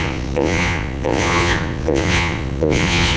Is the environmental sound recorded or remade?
remade